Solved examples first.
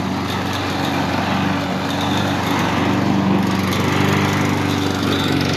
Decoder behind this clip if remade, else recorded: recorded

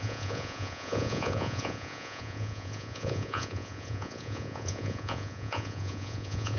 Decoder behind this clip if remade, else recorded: remade, vocoder, Vocos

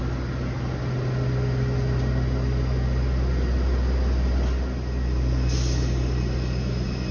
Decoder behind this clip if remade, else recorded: recorded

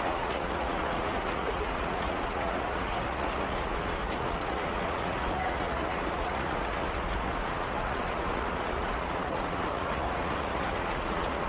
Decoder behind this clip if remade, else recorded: remade, vocoder, Vocos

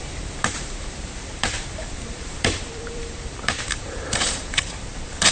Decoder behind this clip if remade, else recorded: remade, vocoder, BigVGAN v2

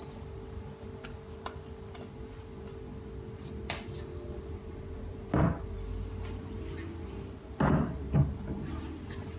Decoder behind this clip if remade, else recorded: recorded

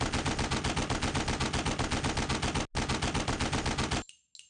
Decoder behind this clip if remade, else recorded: recorded